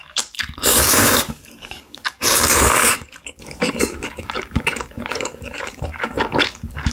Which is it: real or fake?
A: fake